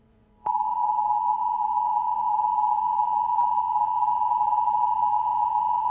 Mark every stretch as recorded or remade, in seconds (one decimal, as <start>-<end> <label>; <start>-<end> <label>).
0.0-5.9 remade

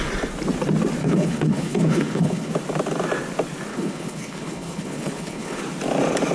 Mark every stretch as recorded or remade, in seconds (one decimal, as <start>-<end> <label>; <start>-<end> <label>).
0.0-1.0 recorded; 1.0-2.5 remade; 2.5-3.7 recorded; 3.7-5.6 remade; 5.6-6.3 recorded

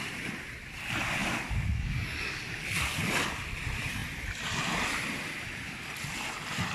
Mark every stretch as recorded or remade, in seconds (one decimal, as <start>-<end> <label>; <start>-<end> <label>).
0.0-1.2 recorded; 1.2-2.4 remade; 2.4-6.7 recorded

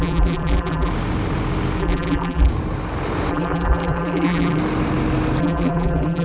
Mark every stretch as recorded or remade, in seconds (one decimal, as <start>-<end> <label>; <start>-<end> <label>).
0.0-0.9 remade; 0.9-1.8 recorded; 1.8-2.5 remade; 2.5-3.3 recorded; 3.3-4.6 remade; 4.6-5.4 recorded; 5.4-6.2 remade

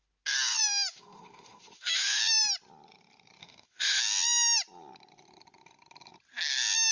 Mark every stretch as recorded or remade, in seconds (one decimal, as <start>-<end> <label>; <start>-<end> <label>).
0.0-0.6 recorded; 0.6-2.2 remade; 2.2-3.4 recorded; 3.4-4.0 remade; 4.0-6.9 recorded

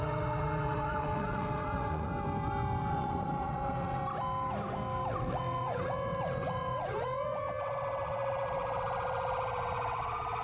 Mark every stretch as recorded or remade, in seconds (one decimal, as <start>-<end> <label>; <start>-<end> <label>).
0.0-2.1 remade; 2.1-2.9 recorded; 2.9-4.0 remade; 4.0-5.1 recorded; 5.1-10.4 remade